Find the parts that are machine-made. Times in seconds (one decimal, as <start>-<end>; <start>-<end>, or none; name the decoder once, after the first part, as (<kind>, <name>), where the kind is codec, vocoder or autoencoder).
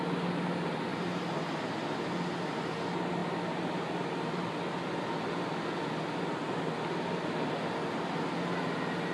none